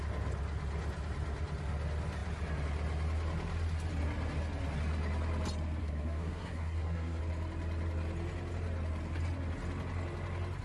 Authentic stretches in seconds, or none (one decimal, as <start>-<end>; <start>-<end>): 0.0-5.8; 7.2-10.6